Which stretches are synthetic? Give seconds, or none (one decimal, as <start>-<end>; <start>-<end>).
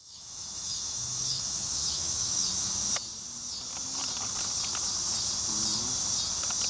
0.0-2.5